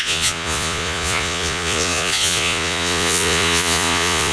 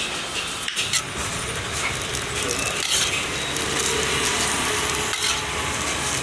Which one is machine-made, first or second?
first